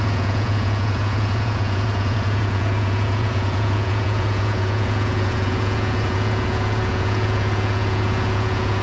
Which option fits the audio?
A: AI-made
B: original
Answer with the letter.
A